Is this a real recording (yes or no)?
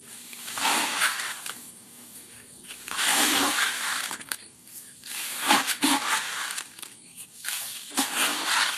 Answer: no